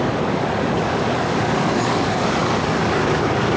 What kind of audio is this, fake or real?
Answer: fake